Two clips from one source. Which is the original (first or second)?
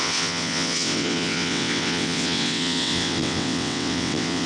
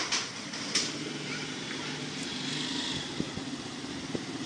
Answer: second